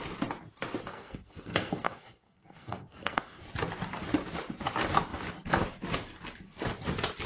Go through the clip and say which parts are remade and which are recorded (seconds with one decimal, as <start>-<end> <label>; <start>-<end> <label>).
0.0-0.9 recorded; 0.9-3.4 remade; 3.4-7.3 recorded